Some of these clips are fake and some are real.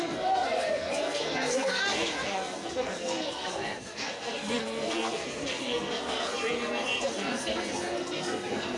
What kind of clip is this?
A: fake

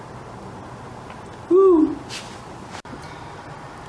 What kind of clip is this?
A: real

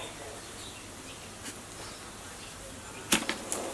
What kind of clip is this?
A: real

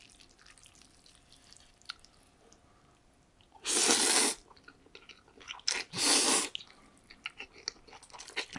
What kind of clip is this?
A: real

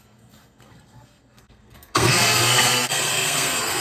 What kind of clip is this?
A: fake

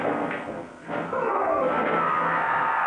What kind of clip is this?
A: fake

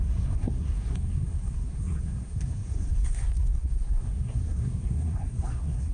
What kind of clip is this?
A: fake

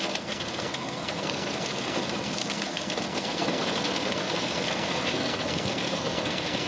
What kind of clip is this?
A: fake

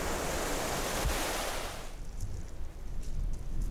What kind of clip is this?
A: real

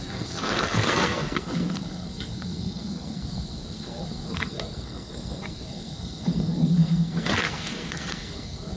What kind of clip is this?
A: fake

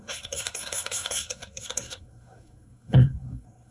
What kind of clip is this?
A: fake